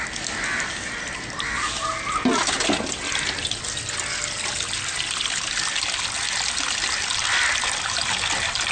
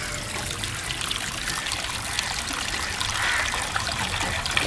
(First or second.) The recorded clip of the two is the first